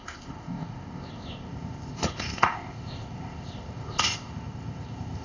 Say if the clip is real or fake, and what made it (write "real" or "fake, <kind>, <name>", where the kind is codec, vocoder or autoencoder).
fake, codec, ZipCodec